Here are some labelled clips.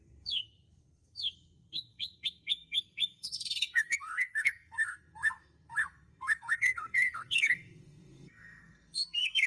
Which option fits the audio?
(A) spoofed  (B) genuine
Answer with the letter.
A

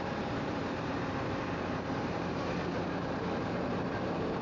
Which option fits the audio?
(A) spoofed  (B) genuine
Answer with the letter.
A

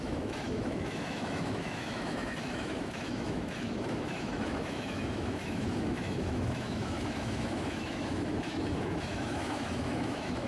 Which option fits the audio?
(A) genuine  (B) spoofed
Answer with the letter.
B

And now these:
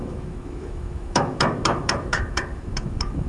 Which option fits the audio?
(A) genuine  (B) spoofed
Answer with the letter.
B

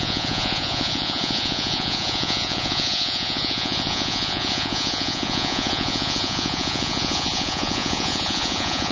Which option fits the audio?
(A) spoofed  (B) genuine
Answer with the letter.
A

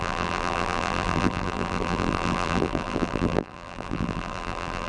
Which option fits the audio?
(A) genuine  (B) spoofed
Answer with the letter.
B